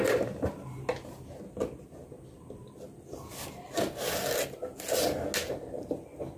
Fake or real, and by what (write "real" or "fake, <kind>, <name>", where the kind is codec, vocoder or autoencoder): real